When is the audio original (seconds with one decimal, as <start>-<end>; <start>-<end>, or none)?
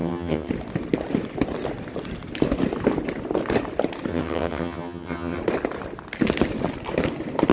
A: 0.5-4.1; 5.4-7.5